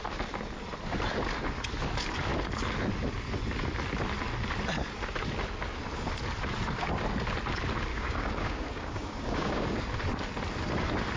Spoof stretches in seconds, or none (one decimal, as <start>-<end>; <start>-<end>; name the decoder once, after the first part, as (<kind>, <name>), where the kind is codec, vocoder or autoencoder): 7.9-9.8 (codec, DAC)